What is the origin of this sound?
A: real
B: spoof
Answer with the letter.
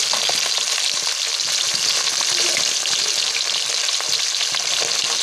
A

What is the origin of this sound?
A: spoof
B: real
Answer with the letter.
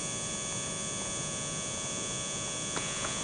A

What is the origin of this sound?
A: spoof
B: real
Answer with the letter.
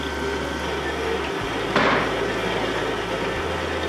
B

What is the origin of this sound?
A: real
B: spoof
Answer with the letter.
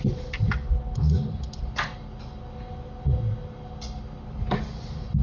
A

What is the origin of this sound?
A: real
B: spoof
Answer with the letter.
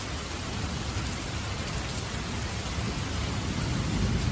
A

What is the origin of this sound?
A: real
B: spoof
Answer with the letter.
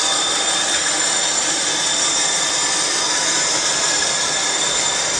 A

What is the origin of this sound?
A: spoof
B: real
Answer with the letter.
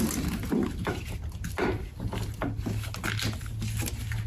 B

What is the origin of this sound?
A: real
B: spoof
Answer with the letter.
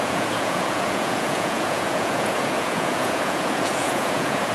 B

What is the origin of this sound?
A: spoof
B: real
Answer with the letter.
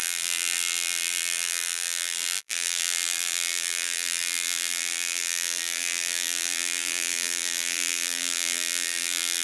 A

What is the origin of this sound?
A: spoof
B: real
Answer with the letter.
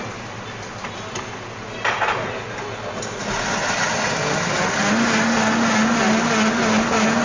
B